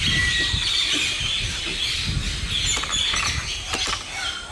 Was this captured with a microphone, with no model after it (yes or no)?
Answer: yes